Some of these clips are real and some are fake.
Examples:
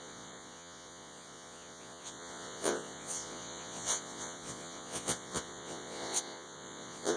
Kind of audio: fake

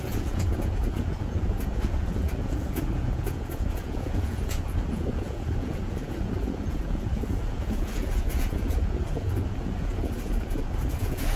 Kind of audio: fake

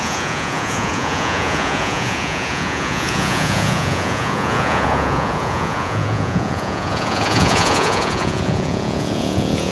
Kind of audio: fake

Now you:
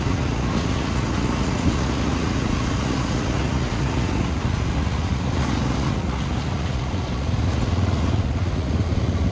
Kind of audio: fake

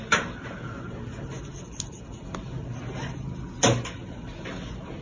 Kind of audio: real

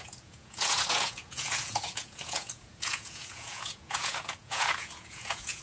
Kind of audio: fake